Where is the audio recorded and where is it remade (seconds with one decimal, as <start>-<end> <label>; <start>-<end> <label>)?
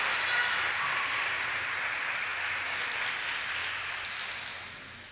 0.0-2.3 recorded; 2.3-2.9 remade; 2.9-5.1 recorded